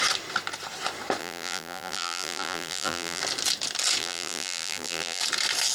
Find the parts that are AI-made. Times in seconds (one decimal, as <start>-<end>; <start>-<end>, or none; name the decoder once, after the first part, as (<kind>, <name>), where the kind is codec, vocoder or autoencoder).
1.2-3.2 (vocoder, BigVGAN v2); 4.0-5.2